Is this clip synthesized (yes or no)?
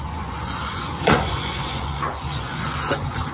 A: yes